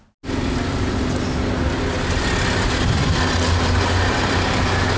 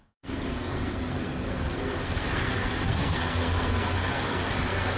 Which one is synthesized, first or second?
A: second